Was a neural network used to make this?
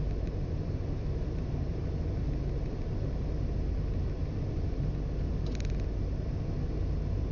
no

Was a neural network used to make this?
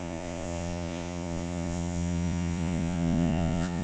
yes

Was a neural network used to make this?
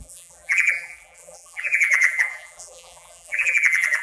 yes